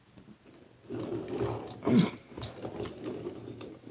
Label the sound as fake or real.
real